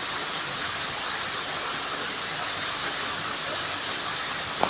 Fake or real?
fake